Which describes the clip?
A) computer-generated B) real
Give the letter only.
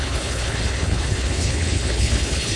A